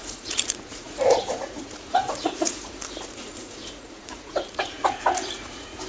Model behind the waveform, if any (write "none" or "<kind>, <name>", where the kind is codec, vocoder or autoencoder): vocoder, Vocos